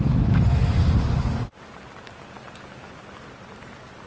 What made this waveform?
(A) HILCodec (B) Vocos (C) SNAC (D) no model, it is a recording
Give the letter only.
D